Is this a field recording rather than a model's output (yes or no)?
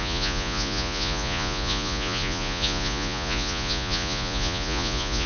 no